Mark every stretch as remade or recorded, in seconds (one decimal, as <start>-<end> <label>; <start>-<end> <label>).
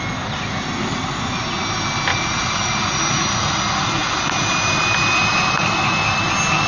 0.0-2.1 recorded; 2.1-3.6 remade; 3.6-6.7 recorded